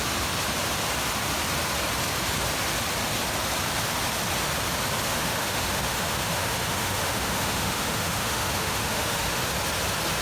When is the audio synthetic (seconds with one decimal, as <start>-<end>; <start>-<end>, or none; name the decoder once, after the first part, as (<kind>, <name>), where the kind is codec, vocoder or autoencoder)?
5.1-9.4 (autoencoder, DAC-VAE)